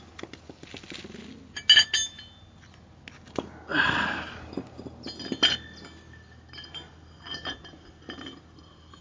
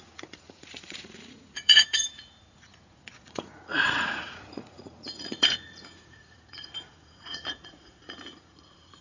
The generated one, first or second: second